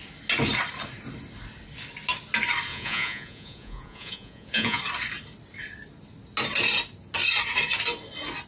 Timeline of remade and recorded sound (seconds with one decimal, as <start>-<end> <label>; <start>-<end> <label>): 0.0-2.7 recorded; 2.7-4.8 remade; 4.8-8.5 recorded